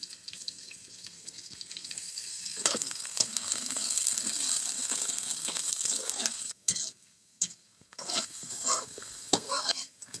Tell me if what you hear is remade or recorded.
remade